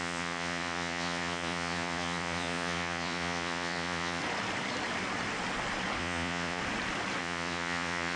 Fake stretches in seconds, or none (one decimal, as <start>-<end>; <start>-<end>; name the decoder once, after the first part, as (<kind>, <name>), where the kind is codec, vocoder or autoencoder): 0.0-4.2 (vocoder, Vocos); 6.0-6.6; 7.2-8.2